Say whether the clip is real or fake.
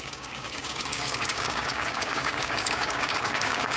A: fake